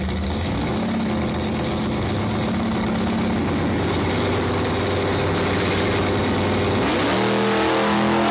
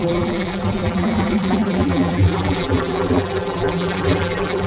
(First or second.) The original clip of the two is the first